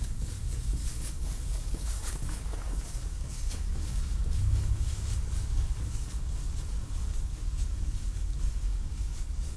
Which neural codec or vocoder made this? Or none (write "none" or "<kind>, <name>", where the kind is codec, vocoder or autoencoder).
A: codec, DAC